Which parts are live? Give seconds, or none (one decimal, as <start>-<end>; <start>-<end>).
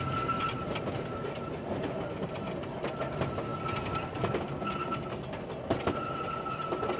0.0-7.0